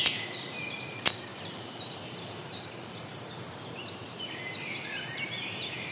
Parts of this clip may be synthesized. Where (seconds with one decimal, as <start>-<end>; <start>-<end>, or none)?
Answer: 1.3-4.2; 4.9-5.9